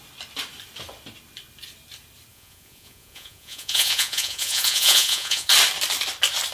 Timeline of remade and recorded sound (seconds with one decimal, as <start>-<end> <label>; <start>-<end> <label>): 0.0-2.3 recorded; 2.3-5.5 remade; 5.5-6.5 recorded